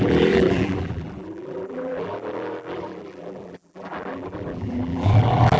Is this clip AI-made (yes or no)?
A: yes